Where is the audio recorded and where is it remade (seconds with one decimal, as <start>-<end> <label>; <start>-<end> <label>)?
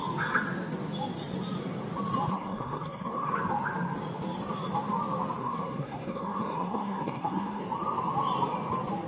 0.0-2.3 recorded; 2.3-3.3 remade; 3.3-5.4 recorded; 5.4-7.6 remade; 7.6-9.1 recorded